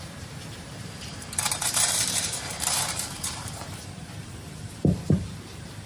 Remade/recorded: remade